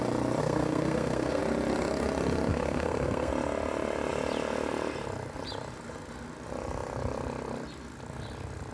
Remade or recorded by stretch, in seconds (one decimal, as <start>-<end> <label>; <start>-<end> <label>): 0.0-0.4 recorded; 0.4-1.4 remade; 1.4-2.5 recorded; 2.5-3.3 remade; 3.3-8.7 recorded